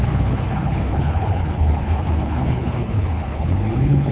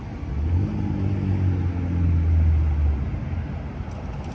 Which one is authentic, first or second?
second